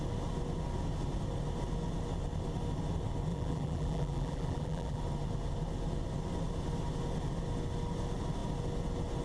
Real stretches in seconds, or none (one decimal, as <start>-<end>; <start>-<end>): 0.0-3.3; 5.0-9.2